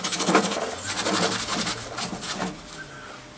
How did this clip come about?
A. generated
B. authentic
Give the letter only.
B